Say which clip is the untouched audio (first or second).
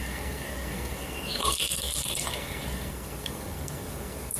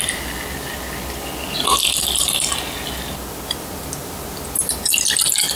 second